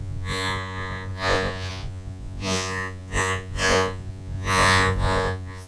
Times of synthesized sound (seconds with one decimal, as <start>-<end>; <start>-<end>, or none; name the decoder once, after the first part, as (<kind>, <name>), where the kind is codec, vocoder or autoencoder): 0.0-5.7 (vocoder, Vocos)